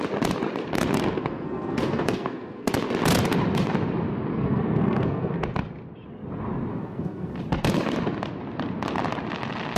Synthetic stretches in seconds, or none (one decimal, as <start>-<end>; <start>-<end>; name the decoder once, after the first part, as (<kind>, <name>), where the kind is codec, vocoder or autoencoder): 1.0-2.7 (codec, SNAC); 4.3-5.4; 6.7-7.4